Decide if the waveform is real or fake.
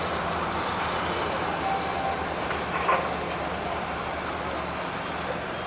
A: real